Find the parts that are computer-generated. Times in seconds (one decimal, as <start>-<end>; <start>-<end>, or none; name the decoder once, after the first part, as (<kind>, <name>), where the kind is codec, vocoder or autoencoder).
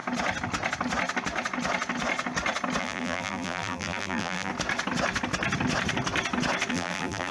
2.8-4.5 (vocoder, BigVGAN v2); 6.7-7.3